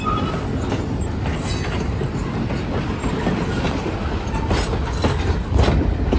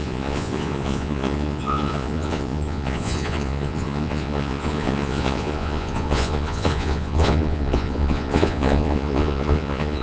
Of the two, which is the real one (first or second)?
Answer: first